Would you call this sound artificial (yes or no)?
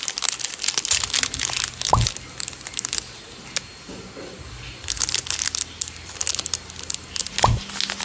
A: no